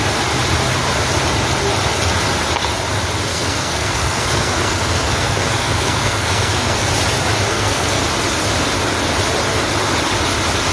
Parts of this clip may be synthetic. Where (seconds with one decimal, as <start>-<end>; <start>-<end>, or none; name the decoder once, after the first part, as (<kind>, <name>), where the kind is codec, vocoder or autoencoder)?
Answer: 3.3-6.9 (codec, SNAC); 7.5-8.0